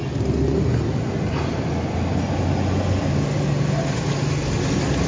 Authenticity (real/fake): real